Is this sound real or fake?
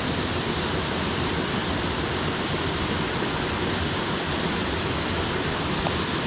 real